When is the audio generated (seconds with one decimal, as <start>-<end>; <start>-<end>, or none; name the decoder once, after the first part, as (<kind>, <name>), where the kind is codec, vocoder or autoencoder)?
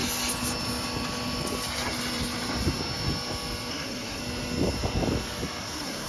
3.7-4.2 (codec, SNAC); 5.6-6.1